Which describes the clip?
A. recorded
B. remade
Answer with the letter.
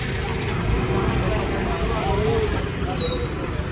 A